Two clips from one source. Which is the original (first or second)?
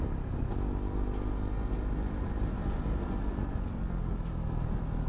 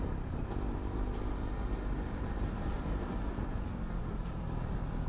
first